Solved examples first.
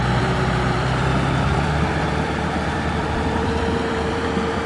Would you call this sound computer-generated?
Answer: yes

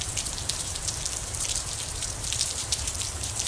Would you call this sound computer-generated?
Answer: yes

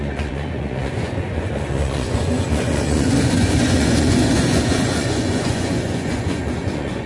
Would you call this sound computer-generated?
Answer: yes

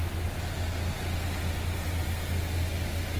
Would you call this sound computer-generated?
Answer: no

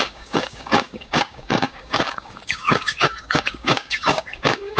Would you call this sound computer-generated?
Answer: yes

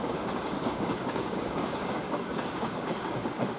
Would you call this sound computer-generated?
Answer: yes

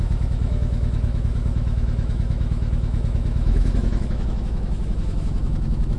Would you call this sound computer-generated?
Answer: yes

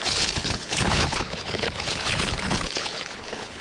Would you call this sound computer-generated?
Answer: yes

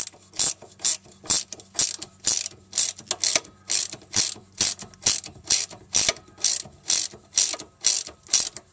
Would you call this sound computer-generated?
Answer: no